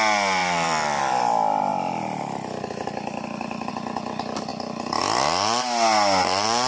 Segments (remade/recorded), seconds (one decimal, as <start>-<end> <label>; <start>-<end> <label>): 0.0-0.4 recorded; 0.4-1.0 remade; 1.0-6.7 recorded